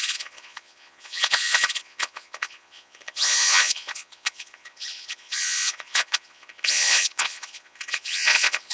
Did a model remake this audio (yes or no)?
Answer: yes